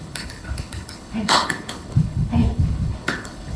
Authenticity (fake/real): fake